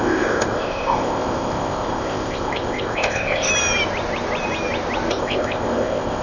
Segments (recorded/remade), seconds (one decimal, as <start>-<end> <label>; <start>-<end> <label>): 0.0-3.5 remade; 3.5-5.1 recorded; 5.1-6.2 remade